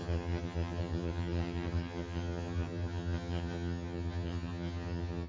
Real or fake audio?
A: fake